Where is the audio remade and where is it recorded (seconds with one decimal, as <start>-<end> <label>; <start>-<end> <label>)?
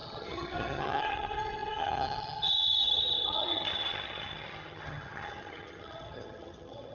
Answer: 0.0-6.9 remade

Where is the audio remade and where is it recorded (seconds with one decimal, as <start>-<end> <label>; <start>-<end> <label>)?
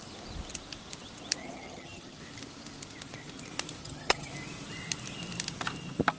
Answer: 0.0-1.4 recorded; 1.4-2.2 remade; 2.2-3.8 recorded; 3.8-4.3 remade; 4.3-6.2 recorded